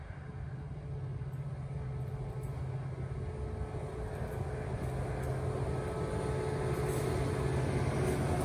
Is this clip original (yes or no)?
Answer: yes